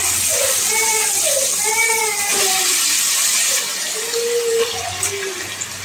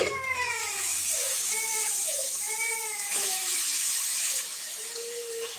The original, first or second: first